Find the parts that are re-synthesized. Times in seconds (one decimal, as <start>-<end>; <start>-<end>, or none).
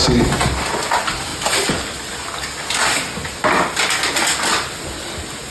none